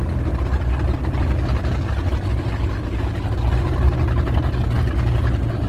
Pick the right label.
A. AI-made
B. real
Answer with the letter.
B